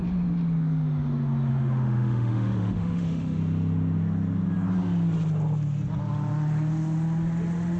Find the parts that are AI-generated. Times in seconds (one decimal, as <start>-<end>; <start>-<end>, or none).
1.5-3.4